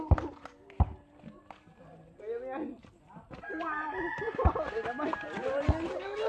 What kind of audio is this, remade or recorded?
recorded